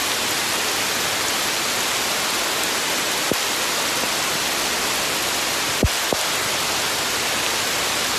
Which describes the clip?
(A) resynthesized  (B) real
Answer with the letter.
B